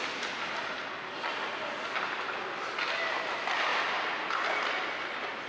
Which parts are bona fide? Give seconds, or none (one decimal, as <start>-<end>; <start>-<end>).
0.0-5.5